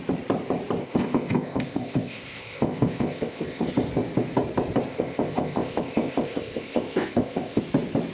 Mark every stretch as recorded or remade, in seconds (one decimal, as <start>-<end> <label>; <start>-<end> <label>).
0.0-0.8 recorded; 0.8-3.7 remade; 3.7-4.9 recorded; 4.9-7.6 remade; 7.6-8.1 recorded